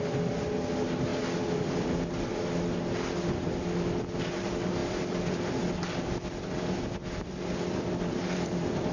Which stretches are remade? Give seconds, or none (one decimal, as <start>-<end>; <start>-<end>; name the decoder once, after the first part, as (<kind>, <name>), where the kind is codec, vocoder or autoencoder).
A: 1.1-2.0 (vocoder, BigVGAN v2); 4.8-8.9